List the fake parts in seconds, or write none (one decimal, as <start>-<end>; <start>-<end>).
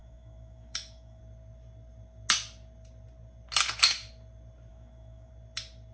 0.0-1.2; 4.7-5.3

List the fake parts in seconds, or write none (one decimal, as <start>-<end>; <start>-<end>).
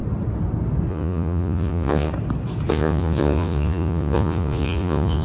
0.9-2.1; 2.7-5.2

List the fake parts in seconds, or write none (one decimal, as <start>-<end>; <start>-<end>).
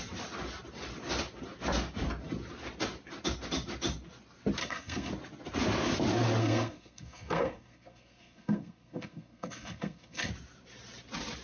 4.6-5.1; 6.4-10.3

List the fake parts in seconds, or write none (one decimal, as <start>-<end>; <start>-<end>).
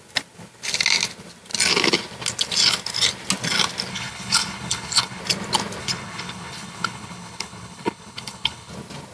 3.9-5.2; 5.8-8.7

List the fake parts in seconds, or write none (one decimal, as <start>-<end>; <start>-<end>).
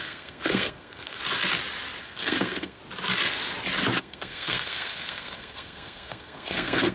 0.0-1.2; 2.0-2.8; 4.0-6.9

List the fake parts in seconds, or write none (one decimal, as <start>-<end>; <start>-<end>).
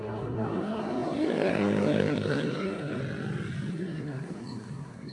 0.0-3.0; 3.7-5.1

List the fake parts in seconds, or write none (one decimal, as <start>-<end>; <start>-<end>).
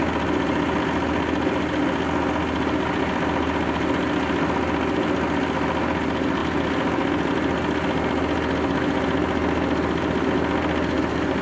none